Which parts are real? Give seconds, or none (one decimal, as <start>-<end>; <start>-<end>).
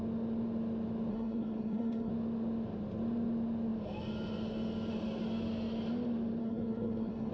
0.0-1.1; 2.1-6.4